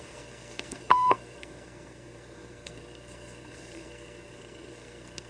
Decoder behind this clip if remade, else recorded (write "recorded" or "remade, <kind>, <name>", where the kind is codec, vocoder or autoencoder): remade, codec, SNAC